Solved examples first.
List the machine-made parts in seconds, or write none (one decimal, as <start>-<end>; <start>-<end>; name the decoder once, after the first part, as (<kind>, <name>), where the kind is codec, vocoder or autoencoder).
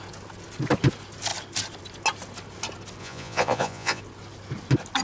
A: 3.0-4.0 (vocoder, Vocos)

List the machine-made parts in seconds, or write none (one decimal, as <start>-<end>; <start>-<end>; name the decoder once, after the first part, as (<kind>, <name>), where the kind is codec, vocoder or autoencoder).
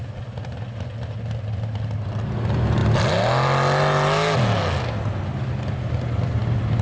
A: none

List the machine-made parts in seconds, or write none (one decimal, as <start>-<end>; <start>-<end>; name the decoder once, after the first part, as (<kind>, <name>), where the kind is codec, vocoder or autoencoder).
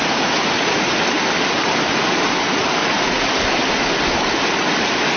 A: 0.0-0.9 (vocoder, Vocos); 2.8-3.3